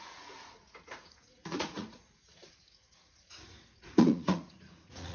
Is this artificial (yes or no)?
yes